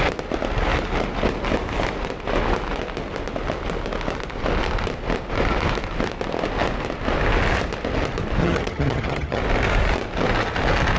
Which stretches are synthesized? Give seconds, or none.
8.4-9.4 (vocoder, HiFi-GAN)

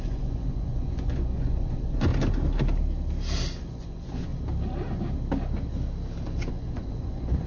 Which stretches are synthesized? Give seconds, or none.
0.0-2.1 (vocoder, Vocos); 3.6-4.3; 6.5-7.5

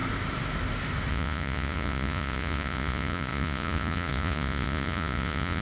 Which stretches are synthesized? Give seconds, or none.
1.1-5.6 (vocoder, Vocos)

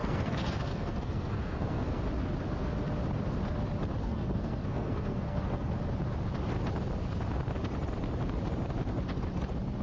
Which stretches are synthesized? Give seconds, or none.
0.0-2.0 (codec, SNAC); 4.0-5.7

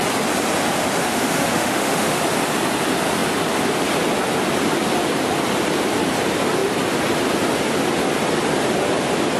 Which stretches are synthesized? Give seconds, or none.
1.0-2.2 (autoencoder, DAC-VAE)

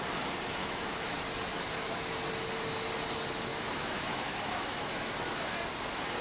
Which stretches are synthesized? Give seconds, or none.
0.6-1.2 (autoencoder, DAC-VAE); 3.5-5.1

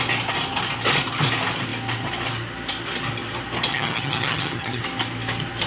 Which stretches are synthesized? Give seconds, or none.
3.7-4.8 (vocoder, HiFi-GAN)